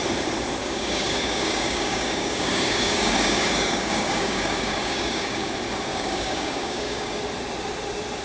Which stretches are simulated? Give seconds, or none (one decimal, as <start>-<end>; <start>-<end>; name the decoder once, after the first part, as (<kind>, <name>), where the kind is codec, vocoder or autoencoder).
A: 0.6-5.5 (codec, DAC); 5.9-7.2